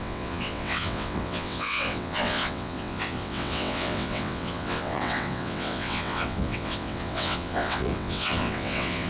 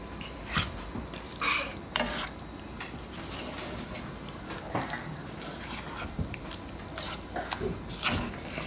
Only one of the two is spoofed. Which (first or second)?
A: first